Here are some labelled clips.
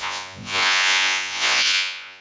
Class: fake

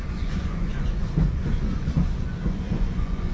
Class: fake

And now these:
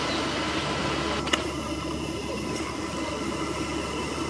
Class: real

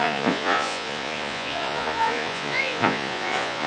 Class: fake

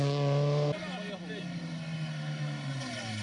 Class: real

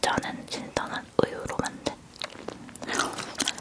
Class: real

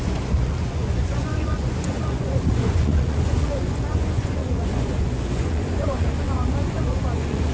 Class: fake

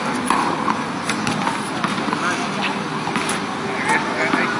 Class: real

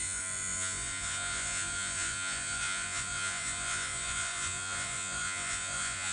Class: fake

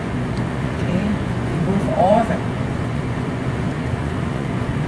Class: fake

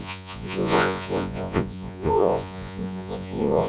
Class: fake